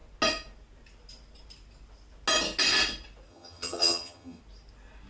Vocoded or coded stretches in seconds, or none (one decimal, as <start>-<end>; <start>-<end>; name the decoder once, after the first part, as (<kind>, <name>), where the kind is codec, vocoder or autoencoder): 3.3-4.4 (vocoder, HiFi-GAN)